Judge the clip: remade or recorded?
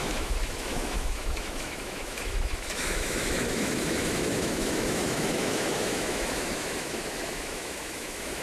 remade